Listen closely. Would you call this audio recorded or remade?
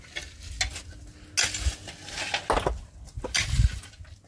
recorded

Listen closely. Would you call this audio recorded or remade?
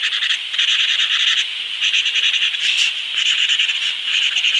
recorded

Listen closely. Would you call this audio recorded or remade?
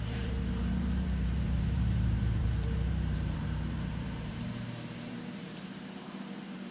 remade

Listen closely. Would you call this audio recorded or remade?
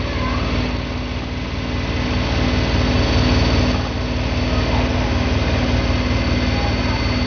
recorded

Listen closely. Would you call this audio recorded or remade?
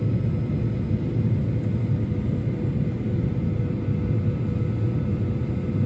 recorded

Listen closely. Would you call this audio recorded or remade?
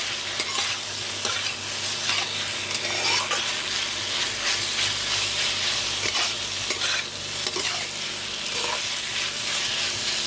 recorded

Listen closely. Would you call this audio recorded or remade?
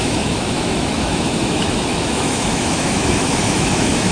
remade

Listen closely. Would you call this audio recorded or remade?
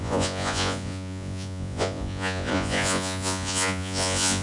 remade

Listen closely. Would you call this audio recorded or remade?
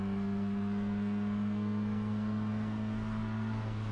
remade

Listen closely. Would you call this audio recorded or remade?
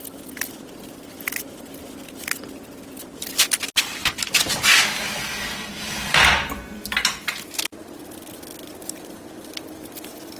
recorded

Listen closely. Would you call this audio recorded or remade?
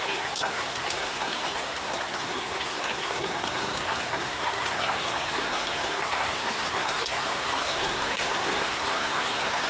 remade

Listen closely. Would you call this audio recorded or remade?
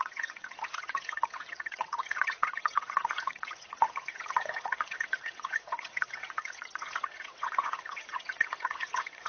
remade